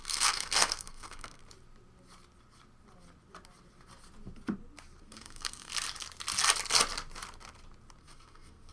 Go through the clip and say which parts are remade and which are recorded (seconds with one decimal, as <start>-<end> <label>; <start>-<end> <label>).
0.0-1.4 remade; 1.4-5.0 recorded; 5.0-5.7 remade; 5.7-8.0 recorded; 8.0-8.7 remade